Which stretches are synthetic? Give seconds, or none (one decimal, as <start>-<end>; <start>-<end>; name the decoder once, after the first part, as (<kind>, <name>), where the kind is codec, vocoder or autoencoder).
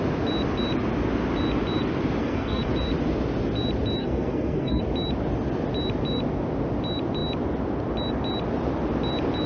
2.2-2.7 (codec, SNAC); 4.0-4.8